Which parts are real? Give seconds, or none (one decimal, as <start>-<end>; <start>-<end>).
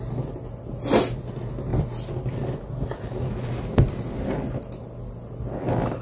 0.0-6.0